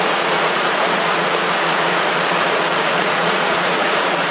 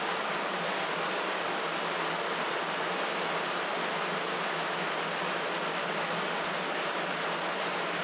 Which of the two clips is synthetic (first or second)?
first